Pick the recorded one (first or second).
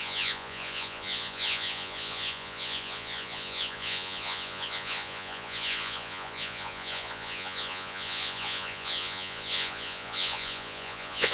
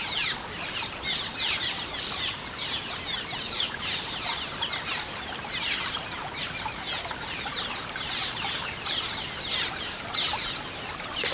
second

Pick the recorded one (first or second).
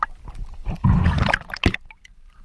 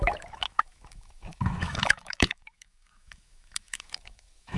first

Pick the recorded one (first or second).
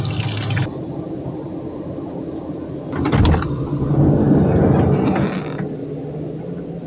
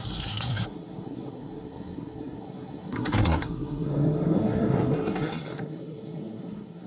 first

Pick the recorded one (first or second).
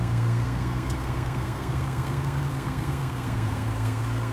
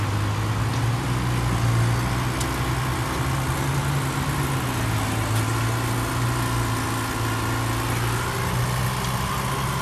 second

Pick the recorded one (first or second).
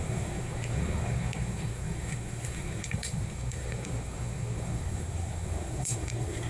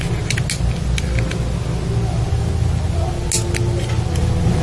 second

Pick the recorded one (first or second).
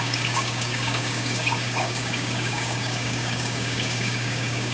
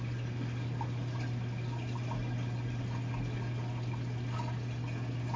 second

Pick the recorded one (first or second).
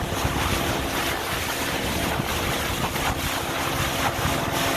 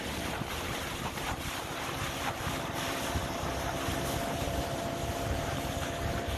first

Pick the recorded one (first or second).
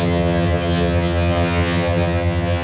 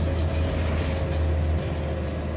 second